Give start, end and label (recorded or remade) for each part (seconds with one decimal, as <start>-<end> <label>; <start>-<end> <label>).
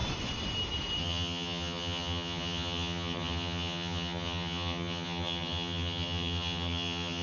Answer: 0.0-1.0 recorded; 1.0-7.2 remade